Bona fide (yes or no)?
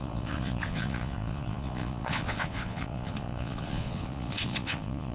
no